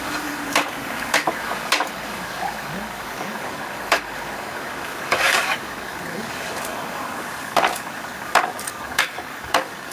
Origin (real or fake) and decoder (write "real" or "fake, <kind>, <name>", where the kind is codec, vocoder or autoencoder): fake, codec, DAC